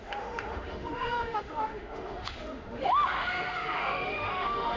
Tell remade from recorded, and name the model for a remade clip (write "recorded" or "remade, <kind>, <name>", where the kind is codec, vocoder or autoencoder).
remade, autoencoder, DAC-VAE